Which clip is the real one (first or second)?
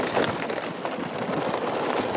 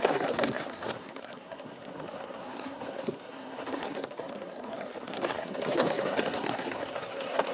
first